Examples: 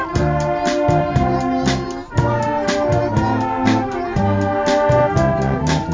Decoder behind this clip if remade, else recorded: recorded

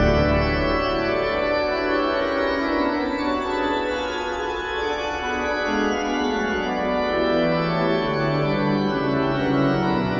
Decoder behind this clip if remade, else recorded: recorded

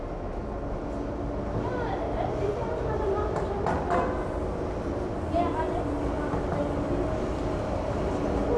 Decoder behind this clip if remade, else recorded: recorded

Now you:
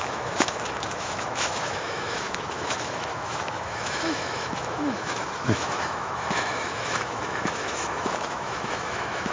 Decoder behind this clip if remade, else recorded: remade, autoencoder, DAC-VAE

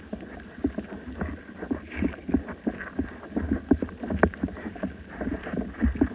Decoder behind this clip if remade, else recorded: recorded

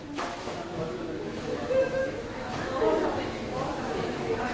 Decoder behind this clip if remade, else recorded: remade, autoencoder, DAC-VAE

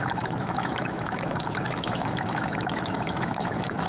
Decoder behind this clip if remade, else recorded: remade, autoencoder, DAC-VAE